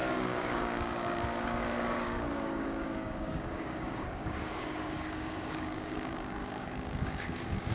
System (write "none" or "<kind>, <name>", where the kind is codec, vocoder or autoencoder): codec, DAC